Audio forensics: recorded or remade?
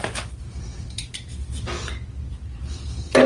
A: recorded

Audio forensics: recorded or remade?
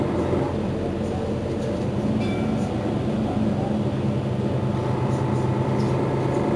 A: recorded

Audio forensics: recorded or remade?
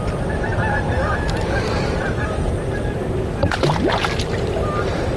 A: recorded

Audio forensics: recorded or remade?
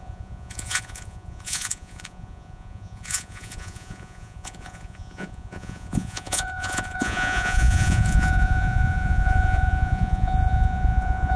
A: remade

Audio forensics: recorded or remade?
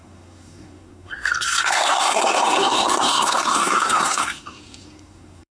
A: remade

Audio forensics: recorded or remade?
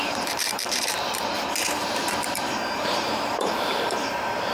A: remade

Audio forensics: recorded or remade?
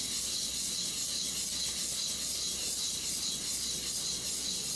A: recorded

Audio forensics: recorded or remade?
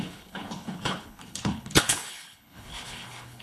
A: remade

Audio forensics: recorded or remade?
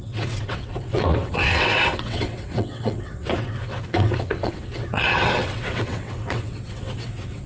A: remade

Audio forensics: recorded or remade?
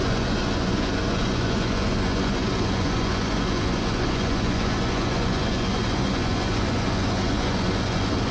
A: remade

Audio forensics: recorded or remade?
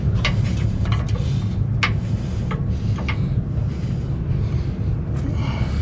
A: recorded